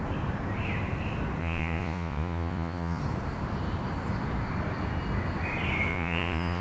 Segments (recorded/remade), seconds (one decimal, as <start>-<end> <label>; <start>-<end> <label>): 0.0-1.4 recorded; 1.4-3.0 remade; 3.0-5.9 recorded; 5.9-6.6 remade